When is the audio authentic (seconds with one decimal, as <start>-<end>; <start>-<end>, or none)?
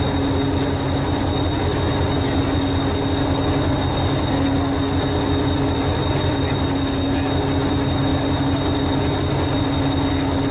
0.0-10.5